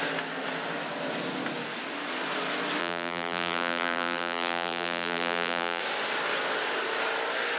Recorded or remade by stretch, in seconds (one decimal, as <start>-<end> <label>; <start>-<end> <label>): 0.0-2.8 recorded; 2.8-5.8 remade; 5.8-7.6 recorded